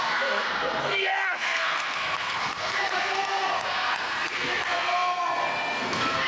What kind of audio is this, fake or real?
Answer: fake